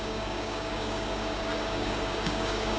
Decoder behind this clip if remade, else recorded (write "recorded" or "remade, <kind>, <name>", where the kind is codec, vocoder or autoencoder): remade, codec, DAC